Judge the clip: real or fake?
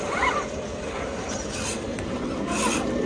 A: real